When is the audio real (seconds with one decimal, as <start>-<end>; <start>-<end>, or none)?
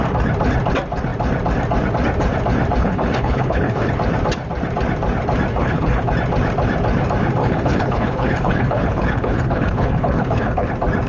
0.0-2.8; 3.9-5.5; 6.1-7.4; 10.7-11.1